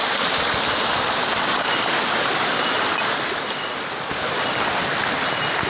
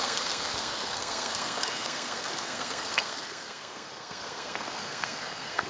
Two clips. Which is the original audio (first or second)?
first